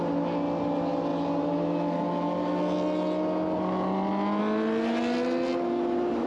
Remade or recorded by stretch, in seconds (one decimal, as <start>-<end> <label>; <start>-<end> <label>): 0.0-6.3 recorded